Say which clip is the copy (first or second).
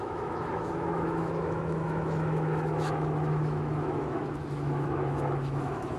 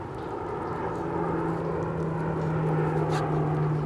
first